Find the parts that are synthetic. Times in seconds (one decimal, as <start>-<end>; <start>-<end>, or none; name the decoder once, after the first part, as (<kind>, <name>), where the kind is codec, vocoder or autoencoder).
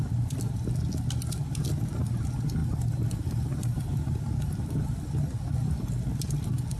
none